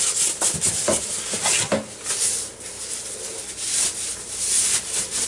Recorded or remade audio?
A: recorded